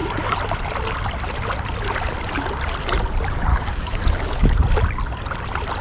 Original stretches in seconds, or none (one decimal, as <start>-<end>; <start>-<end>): 0.0-3.5; 4.5-5.8